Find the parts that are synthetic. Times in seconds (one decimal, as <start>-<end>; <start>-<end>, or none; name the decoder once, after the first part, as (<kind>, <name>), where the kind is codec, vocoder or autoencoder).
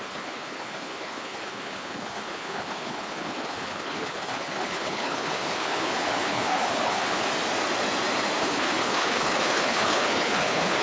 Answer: 0.0-7.3 (codec, HILCodec); 8.4-10.8